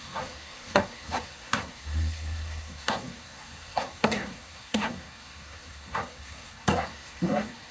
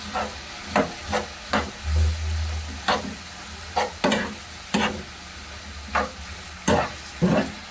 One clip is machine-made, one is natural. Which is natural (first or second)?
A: second